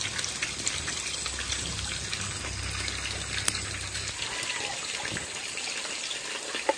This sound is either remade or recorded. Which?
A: recorded